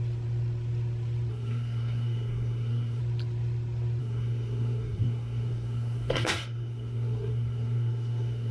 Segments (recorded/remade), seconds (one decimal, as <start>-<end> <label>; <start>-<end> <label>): 0.0-1.3 recorded; 1.3-3.0 remade; 3.0-4.0 recorded; 4.0-8.5 remade